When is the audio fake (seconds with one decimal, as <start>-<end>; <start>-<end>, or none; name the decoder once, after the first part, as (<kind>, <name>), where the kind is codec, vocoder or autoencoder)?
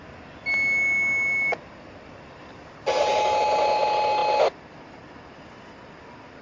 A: none